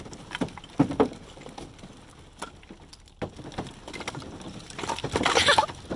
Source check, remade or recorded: recorded